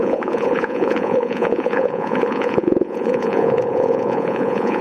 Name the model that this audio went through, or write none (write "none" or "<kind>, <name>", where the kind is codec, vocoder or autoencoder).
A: vocoder, Vocos